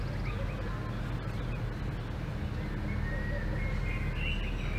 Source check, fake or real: real